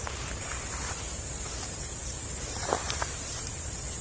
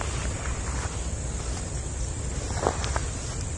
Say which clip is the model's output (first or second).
first